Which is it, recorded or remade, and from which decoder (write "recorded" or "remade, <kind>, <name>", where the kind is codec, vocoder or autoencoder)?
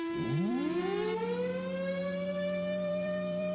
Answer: remade, vocoder, BigVGAN v2